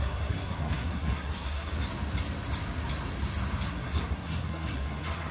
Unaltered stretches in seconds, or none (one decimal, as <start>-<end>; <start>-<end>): 1.7-3.7